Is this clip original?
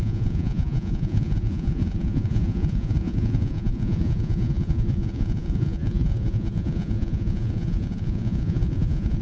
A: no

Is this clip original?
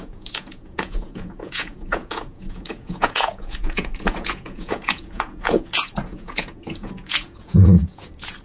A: no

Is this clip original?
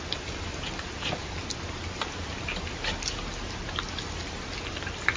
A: yes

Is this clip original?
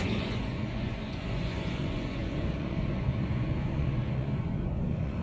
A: no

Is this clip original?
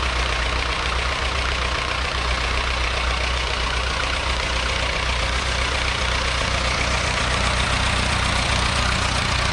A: no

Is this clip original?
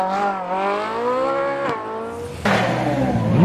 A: yes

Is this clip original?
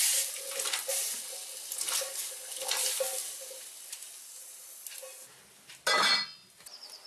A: yes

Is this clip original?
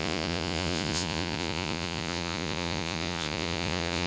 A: no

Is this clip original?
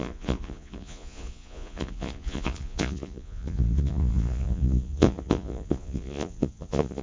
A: no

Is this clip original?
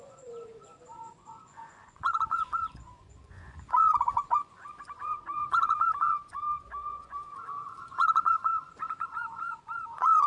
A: no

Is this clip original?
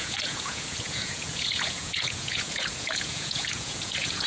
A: no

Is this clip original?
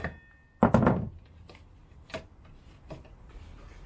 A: yes